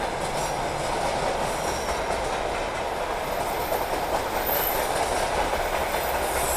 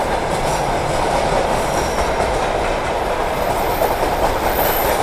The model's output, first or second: second